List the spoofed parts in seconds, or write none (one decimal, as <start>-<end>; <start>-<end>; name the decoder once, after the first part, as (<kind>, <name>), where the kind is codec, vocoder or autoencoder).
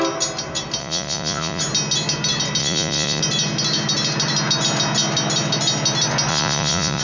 0.8-1.6 (vocoder, Vocos); 2.6-3.2; 6.3-7.0